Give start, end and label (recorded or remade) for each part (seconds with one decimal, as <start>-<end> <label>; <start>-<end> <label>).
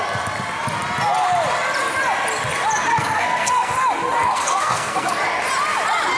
0.0-2.9 recorded; 2.9-3.7 remade; 3.7-4.2 recorded; 4.2-5.2 remade; 5.2-6.2 recorded